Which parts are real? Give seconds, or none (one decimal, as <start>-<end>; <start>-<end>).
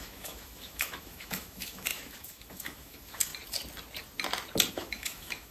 3.3-4.7